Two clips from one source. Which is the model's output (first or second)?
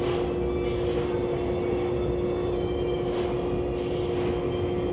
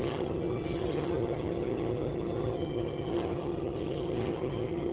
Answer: second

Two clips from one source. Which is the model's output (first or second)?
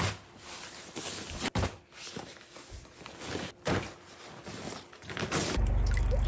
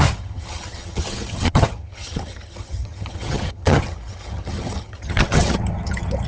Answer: second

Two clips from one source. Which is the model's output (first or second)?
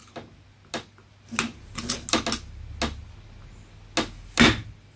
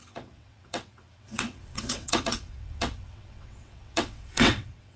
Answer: second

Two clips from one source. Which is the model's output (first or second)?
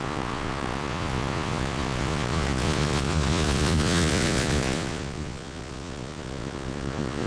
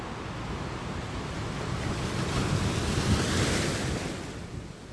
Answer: first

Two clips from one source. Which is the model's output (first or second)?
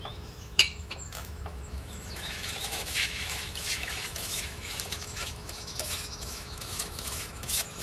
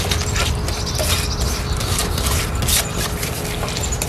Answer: first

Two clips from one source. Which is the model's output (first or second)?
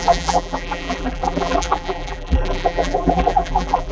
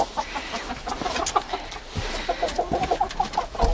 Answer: first